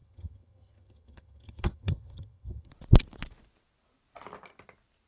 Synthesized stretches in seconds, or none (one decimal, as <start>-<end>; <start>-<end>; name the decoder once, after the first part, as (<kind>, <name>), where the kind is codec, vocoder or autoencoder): 0.0-2.7 (vocoder, HiFi-GAN)